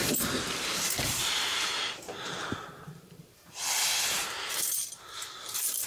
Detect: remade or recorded remade